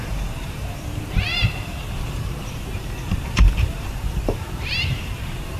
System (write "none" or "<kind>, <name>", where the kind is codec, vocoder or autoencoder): vocoder, BigVGAN v2